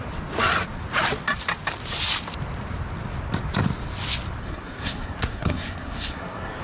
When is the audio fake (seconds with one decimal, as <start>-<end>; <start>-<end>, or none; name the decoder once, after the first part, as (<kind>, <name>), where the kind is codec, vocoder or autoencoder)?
4.4-6.6 (codec, SNAC)